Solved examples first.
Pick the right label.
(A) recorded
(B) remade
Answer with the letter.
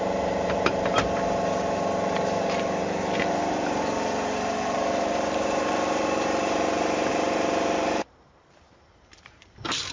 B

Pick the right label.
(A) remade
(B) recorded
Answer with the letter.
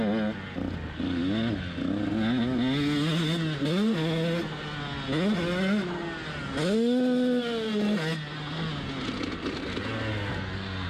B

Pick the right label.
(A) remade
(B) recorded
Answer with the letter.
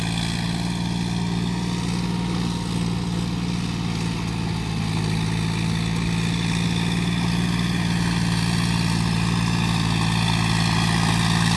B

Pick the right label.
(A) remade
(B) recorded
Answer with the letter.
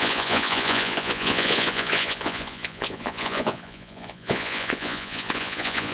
A